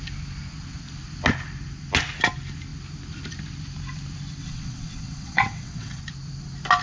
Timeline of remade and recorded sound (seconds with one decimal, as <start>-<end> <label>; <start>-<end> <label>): 0.0-4.4 recorded; 4.4-6.0 remade; 6.0-6.8 recorded